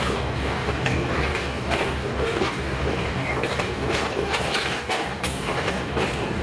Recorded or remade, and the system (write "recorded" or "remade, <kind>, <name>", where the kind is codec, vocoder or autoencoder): remade, codec, DAC